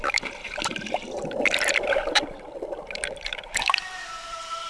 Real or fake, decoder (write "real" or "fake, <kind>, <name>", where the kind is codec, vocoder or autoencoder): fake, vocoder, BigVGAN v2